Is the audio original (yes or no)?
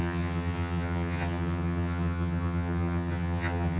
no